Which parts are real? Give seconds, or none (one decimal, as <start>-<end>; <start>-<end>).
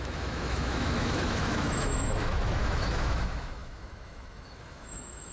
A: none